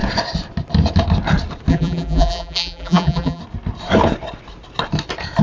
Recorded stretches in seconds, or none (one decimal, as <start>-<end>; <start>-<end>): 0.0-1.7; 3.4-5.4

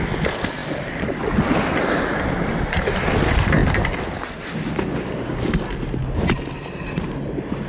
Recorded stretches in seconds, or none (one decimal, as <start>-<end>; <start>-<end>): 0.0-7.7

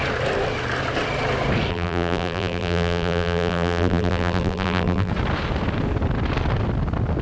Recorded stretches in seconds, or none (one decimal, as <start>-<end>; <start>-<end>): 0.0-1.7; 5.1-7.2